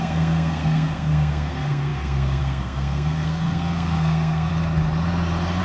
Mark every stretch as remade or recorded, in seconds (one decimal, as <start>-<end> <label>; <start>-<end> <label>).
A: 0.0-4.5 remade; 4.5-5.6 recorded